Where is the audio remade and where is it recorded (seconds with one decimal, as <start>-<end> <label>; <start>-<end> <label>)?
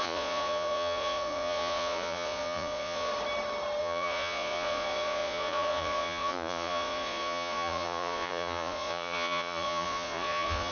0.0-3.1 remade; 3.1-3.8 recorded; 3.8-10.7 remade